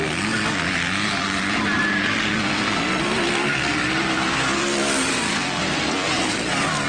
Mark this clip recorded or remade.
recorded